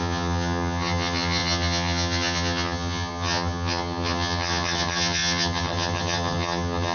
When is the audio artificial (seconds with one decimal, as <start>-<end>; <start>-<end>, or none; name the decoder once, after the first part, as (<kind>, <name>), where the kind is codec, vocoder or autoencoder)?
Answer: 0.0-6.9 (vocoder, HiFi-GAN)